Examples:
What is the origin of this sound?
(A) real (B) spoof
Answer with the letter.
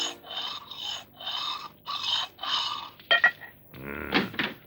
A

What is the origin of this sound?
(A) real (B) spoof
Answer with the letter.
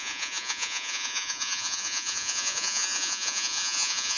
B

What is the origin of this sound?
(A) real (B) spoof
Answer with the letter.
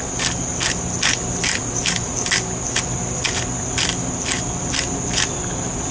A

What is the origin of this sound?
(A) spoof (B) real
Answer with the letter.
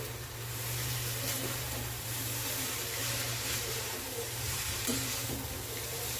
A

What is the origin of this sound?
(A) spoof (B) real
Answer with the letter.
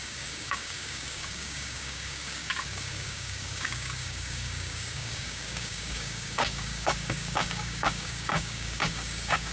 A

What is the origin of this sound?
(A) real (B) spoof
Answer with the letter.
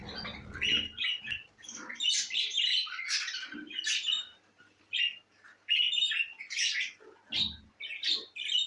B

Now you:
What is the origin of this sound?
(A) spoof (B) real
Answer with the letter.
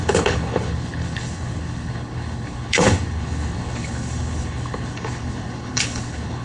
A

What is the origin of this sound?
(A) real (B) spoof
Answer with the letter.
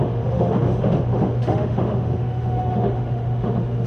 B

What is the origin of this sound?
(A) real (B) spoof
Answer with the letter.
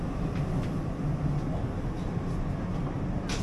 A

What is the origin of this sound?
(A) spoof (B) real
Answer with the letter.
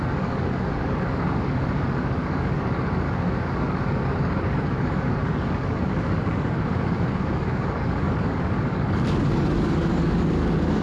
A